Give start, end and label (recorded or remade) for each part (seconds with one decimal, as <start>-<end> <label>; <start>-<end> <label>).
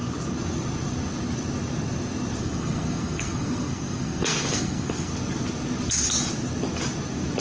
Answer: 0.0-2.4 recorded; 2.4-5.1 remade; 5.1-7.4 recorded